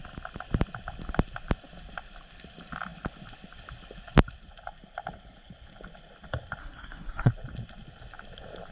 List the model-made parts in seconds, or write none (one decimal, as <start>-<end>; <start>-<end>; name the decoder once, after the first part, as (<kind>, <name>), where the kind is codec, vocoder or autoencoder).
6.6-7.3 (codec, SNAC)